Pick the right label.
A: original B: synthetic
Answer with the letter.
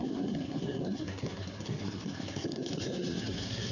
B